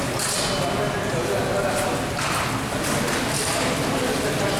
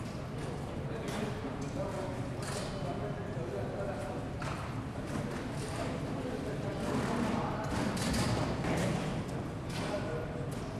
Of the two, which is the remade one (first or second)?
second